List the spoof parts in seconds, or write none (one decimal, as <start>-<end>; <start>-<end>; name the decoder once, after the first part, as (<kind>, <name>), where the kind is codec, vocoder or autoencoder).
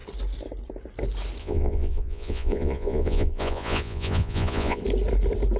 1.4-4.8 (vocoder, Vocos)